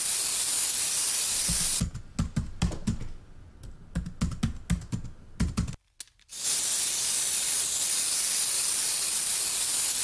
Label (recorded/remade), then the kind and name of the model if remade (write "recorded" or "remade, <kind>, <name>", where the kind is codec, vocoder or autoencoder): recorded